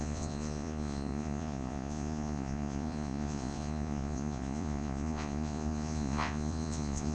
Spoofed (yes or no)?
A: yes